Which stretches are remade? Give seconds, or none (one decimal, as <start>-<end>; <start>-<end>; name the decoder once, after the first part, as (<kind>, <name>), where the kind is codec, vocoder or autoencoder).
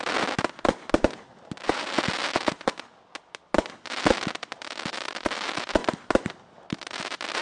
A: none